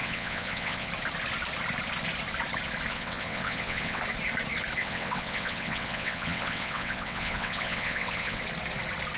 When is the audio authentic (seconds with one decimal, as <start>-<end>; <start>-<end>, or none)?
0.9-2.9; 4.0-4.8; 8.4-9.2